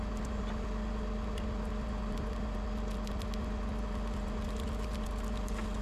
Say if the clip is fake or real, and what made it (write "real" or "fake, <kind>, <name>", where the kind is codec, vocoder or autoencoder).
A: real